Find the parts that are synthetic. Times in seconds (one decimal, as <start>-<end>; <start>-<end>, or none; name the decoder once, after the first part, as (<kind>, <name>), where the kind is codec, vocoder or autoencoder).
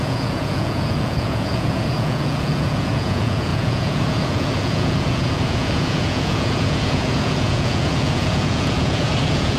0.0-9.6 (vocoder, Vocos)